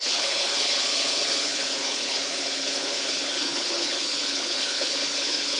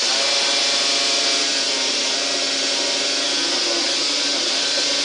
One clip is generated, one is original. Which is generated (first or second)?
first